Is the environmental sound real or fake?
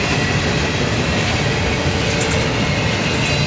real